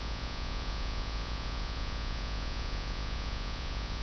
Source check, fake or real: fake